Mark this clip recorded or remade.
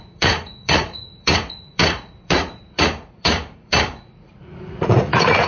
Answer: remade